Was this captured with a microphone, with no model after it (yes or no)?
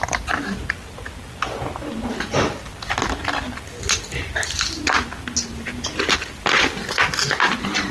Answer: yes